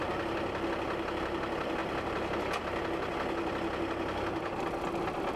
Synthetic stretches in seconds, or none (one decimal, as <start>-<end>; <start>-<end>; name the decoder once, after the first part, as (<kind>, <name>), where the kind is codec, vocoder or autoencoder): none